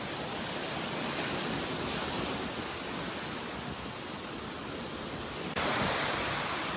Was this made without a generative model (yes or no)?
yes